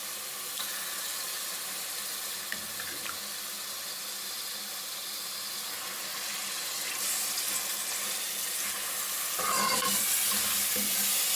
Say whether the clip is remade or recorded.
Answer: recorded